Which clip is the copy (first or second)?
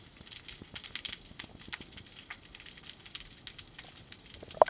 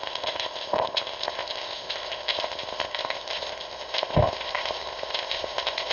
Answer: second